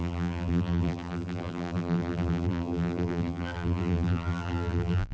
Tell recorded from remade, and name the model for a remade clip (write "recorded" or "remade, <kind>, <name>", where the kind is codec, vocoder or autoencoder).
remade, vocoder, BigVGAN v2